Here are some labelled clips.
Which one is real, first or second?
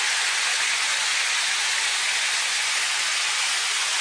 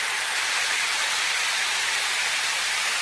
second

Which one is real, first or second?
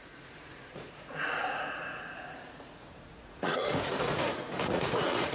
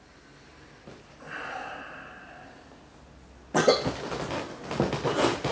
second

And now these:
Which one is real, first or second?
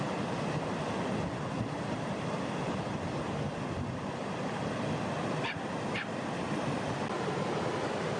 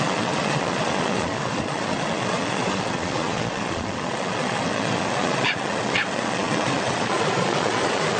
first